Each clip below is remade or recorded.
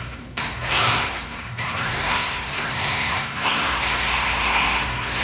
remade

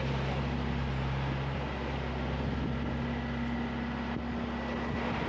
recorded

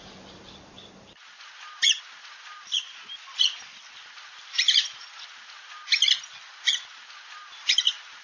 recorded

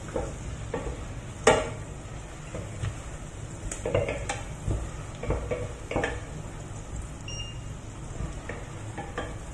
recorded